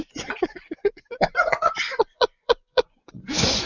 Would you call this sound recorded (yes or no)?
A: no